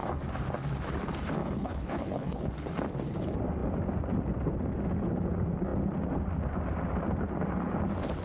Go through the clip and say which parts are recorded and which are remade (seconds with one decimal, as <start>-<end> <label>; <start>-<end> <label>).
0.0-1.4 recorded; 1.4-2.4 remade; 2.4-8.2 recorded